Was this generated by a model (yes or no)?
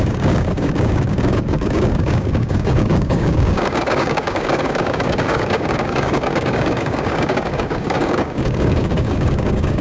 yes